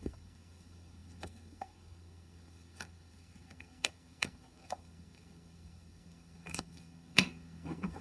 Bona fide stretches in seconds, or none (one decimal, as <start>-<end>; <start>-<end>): none